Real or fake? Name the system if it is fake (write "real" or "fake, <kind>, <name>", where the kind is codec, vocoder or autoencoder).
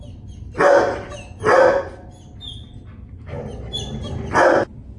real